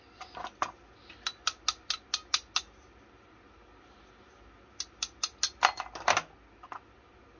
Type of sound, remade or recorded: recorded